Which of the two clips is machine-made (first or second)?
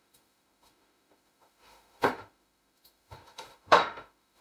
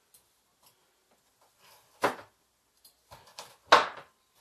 first